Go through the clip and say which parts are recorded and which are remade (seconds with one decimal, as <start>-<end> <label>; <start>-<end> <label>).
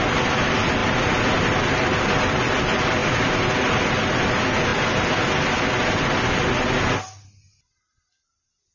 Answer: 0.0-8.7 recorded